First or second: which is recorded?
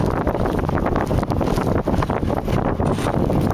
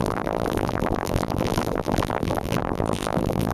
first